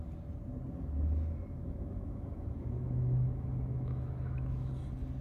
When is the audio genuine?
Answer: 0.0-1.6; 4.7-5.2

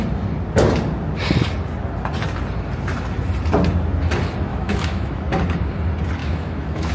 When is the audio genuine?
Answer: 0.0-4.5; 5.2-6.2

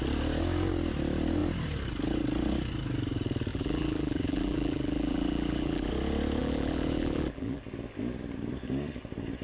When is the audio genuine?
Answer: 0.0-3.5; 5.9-6.4; 7.6-9.4

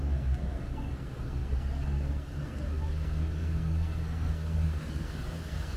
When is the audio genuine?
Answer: none

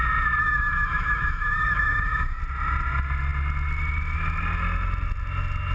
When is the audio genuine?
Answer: 0.0-0.4; 2.4-5.7

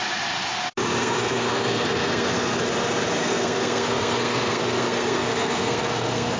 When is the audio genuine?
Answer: 0.0-1.0; 2.6-3.2

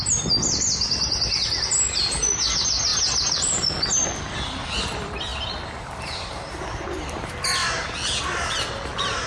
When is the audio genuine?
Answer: 0.0-9.3

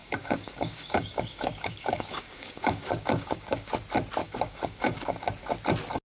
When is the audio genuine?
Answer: 3.7-4.2; 5.3-6.1